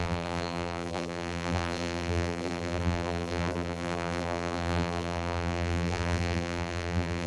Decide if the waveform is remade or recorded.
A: remade